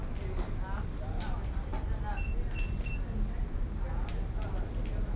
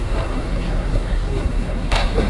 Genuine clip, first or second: first